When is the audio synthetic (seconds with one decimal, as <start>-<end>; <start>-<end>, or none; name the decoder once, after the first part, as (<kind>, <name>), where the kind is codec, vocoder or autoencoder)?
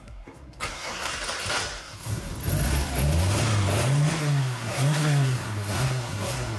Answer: 0.0-1.1 (codec, SNAC); 1.8-2.3; 4.2-6.6